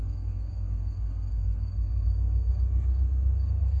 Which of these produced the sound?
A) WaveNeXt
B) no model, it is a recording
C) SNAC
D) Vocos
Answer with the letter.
C